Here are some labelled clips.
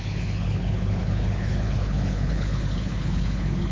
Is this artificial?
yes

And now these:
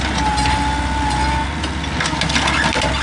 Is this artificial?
no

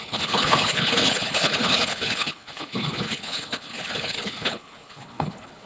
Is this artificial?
yes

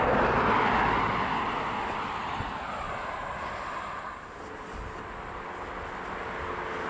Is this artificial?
no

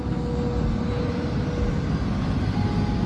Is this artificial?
no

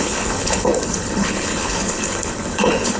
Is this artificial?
yes